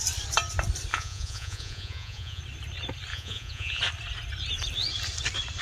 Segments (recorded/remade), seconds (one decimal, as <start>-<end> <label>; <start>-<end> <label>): 0.0-0.9 recorded; 0.9-2.4 remade; 2.4-3.1 recorded; 3.1-3.8 remade; 3.8-5.6 recorded